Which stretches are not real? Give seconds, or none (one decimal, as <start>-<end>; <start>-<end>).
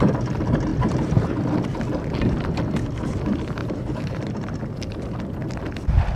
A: 3.6-4.6